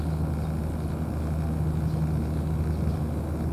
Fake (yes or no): no